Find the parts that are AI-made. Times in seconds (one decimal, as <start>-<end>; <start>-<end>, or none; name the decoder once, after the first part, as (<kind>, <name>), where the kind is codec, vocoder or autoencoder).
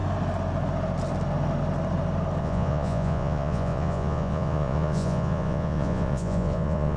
2.4-7.0 (vocoder, Vocos)